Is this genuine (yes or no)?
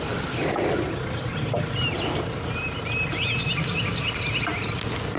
yes